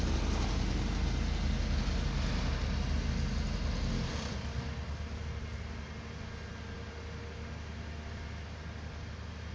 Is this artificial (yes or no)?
no